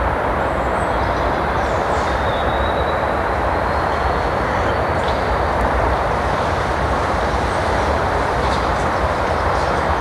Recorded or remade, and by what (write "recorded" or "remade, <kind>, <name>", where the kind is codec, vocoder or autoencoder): remade, vocoder, BigVGAN v2